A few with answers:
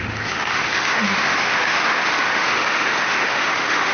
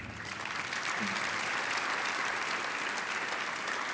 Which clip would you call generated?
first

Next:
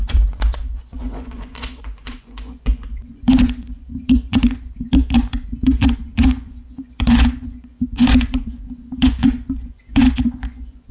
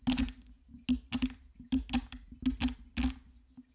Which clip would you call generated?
first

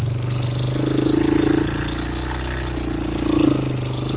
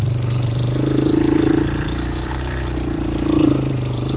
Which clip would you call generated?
second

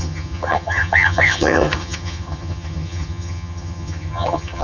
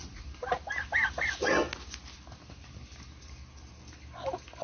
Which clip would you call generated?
first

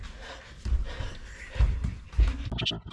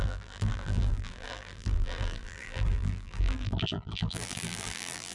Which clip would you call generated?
second